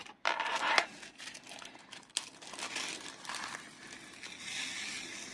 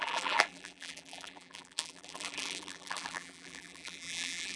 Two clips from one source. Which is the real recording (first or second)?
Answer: first